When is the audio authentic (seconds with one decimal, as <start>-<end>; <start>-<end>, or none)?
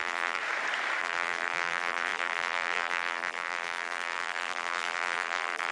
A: 0.4-1.0